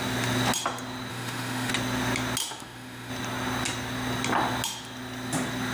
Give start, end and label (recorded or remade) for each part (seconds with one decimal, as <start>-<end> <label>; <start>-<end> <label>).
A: 0.0-1.1 recorded; 1.1-1.7 remade; 1.7-2.4 recorded; 2.4-3.1 remade; 3.1-5.7 recorded